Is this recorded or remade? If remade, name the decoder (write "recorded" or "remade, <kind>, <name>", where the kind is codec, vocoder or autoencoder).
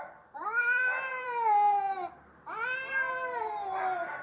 remade, vocoder, BigVGAN v2